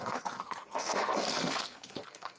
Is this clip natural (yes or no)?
no